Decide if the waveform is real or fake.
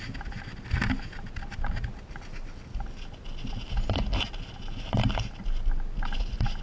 real